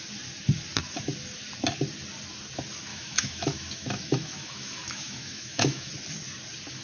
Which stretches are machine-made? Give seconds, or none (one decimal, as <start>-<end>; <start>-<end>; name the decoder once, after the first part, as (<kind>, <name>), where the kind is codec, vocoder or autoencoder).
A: 2.9-5.9 (autoencoder, DAC-VAE)